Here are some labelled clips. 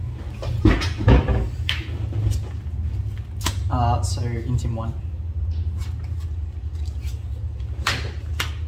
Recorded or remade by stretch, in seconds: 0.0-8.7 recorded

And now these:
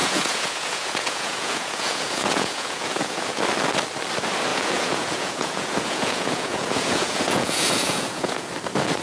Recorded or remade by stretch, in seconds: 0.0-3.4 remade; 3.4-4.5 recorded; 4.5-8.5 remade; 8.5-9.0 recorded

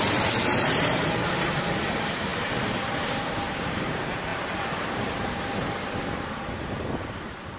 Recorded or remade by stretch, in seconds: 0.0-7.6 remade

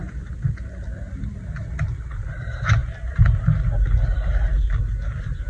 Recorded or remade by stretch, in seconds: 0.0-5.5 recorded

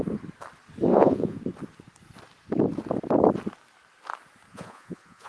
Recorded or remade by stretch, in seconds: 0.0-0.9 recorded; 0.9-1.4 remade; 1.4-4.5 recorded; 4.5-5.3 remade

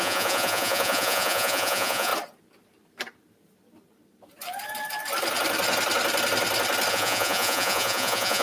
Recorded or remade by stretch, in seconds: 0.0-2.1 remade; 2.1-6.9 recorded; 6.9-8.4 remade

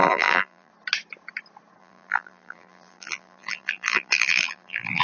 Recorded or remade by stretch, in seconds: 0.0-0.7 remade; 0.7-1.8 recorded; 1.8-5.0 remade

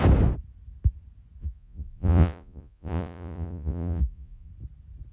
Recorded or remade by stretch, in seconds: 0.0-1.4 recorded; 1.4-4.5 remade; 4.5-5.1 recorded